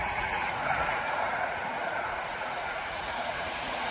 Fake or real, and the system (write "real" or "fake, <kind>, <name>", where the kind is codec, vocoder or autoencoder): fake, vocoder, Vocos